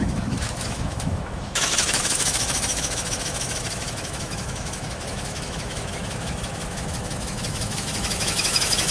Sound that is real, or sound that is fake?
fake